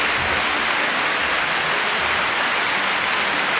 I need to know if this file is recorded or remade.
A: recorded